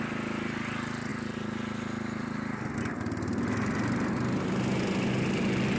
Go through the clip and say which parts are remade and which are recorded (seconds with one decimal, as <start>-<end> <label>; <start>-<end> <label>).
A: 0.0-5.8 recorded